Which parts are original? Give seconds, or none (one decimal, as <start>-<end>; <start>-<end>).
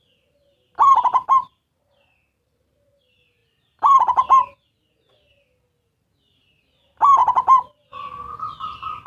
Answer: 0.0-9.1